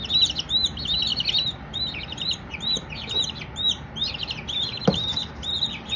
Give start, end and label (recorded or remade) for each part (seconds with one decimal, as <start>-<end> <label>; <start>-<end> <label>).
0.0-6.0 recorded